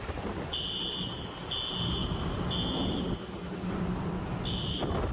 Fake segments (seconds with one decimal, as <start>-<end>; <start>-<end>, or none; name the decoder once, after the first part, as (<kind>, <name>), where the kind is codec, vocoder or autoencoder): none